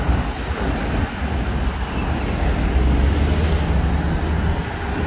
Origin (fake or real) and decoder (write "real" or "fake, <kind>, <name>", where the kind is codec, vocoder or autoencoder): real